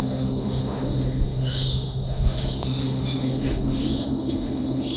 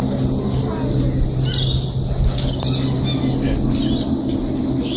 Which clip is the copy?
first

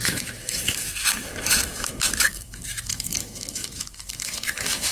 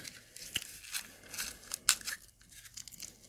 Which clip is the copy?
first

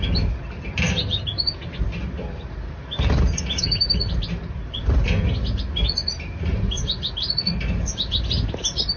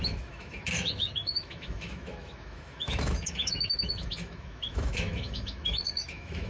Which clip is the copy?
second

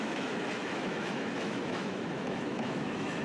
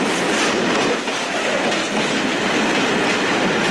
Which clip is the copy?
first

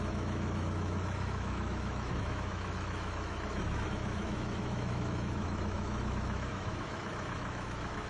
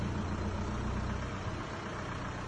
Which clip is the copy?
first